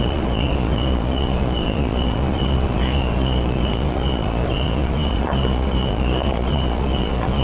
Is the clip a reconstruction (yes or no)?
yes